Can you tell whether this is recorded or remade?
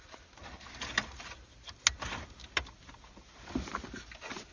recorded